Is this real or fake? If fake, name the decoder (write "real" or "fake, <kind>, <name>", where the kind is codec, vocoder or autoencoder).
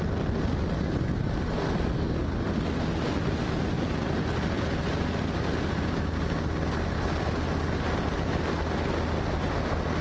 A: real